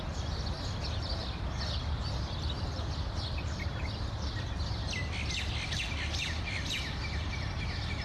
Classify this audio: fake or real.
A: real